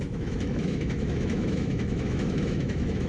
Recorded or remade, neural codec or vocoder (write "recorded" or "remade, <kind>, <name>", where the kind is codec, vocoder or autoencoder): remade, autoencoder, DAC-VAE